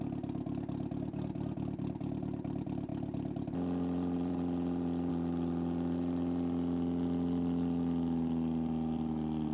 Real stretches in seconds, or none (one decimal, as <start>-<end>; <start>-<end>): 0.0-2.9; 5.1-9.5